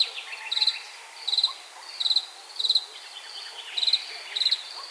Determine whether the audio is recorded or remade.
recorded